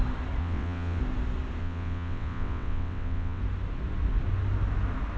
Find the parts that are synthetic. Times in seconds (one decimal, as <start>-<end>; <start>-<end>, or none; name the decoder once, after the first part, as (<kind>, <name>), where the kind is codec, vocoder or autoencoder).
0.4-1.0 (vocoder, WaveNeXt); 1.6-3.4